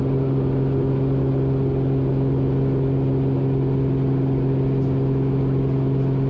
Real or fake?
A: real